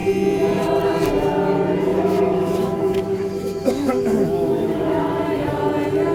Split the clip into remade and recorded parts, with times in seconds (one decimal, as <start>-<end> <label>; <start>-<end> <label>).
0.0-1.9 recorded; 1.9-5.6 remade; 5.6-6.1 recorded